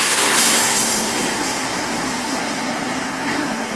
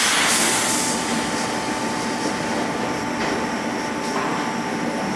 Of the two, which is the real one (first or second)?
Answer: second